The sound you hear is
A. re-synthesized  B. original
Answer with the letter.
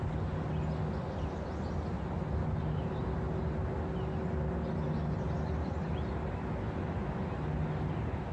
B